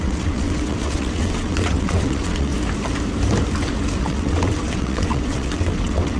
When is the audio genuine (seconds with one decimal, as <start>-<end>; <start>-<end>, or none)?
2.5-4.0